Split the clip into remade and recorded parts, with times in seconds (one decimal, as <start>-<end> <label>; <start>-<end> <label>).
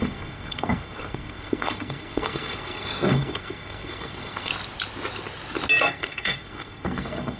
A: 0.0-4.5 remade; 4.5-5.8 recorded; 5.8-7.4 remade